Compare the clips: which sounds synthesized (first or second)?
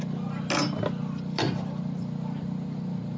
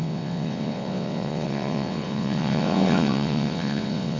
second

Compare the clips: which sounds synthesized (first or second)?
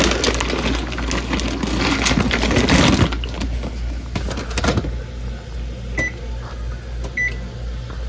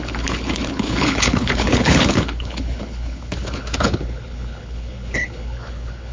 second